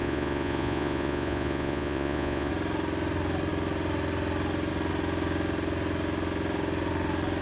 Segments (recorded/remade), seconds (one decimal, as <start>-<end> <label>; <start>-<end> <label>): 0.0-2.5 remade; 2.5-7.4 recorded